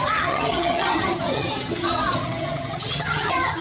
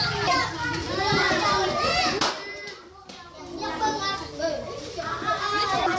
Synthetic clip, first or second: first